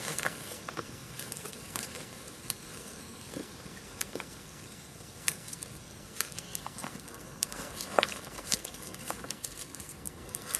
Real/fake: fake